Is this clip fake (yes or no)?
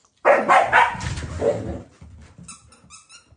no